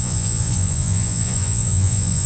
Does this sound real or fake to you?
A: fake